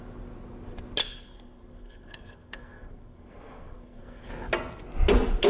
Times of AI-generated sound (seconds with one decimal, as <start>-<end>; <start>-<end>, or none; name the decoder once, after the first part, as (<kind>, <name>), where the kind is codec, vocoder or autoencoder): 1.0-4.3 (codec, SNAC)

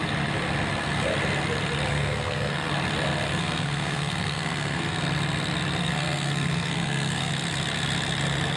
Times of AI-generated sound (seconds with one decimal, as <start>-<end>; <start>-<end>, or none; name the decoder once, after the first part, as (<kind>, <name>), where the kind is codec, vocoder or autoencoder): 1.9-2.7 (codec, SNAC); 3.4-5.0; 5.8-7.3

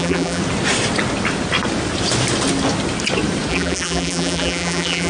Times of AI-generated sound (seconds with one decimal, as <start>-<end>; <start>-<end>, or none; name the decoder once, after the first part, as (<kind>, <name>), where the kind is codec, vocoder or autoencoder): 0.0-0.4 (vocoder, BigVGAN v2); 3.5-5.1

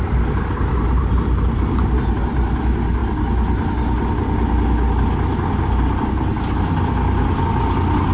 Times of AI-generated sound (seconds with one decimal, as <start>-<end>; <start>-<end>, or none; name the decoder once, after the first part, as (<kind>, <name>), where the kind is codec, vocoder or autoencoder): 0.0-2.1 (vocoder, BigVGAN v2)

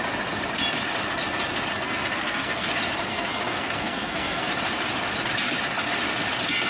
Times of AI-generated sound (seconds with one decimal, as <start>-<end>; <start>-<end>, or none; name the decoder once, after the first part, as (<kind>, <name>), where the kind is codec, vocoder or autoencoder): 1.7-2.7 (codec, SNAC); 3.1-4.5